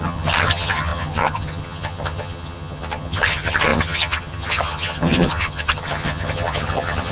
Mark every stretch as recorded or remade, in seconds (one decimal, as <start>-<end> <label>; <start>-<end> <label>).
0.0-7.1 remade